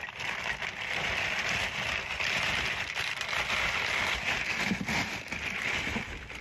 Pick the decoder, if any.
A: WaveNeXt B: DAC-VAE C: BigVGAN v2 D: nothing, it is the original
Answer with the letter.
C